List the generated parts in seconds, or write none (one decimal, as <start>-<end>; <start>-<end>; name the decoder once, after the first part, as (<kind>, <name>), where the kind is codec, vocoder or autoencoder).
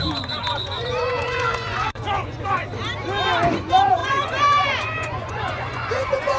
0.0-2.6 (vocoder, Vocos); 3.5-6.4